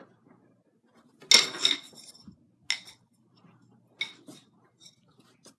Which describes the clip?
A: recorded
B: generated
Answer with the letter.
A